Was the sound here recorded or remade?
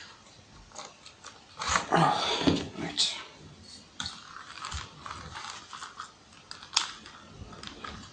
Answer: recorded